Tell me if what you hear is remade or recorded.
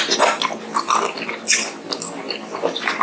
recorded